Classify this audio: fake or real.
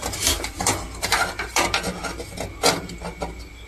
real